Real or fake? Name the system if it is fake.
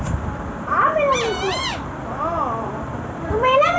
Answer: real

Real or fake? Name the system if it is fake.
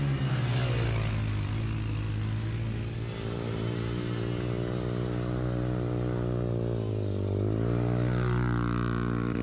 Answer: real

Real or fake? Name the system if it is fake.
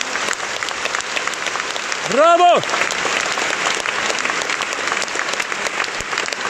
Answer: real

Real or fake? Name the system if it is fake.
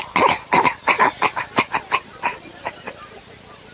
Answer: fake, vocoder, BigVGAN v2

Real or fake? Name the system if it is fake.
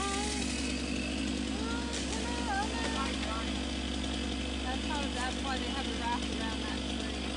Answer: real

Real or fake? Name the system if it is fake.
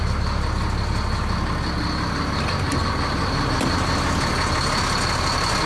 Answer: real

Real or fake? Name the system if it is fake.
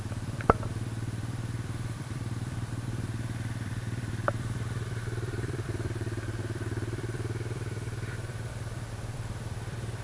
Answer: fake, vocoder, BigVGAN v2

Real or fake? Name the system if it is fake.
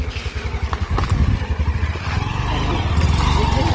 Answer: real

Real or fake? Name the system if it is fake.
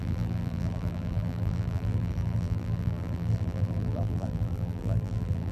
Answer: fake, vocoder, BigVGAN v2